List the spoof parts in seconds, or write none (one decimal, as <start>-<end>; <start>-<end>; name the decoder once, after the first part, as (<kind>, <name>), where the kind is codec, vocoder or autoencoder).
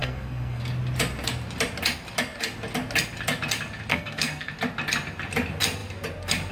0.0-0.6 (codec, SNAC); 3.9-4.5